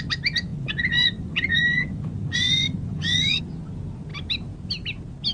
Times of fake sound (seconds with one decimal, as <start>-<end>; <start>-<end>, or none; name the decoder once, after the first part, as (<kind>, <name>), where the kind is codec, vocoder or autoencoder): 0.5-3.4 (vocoder, Vocos)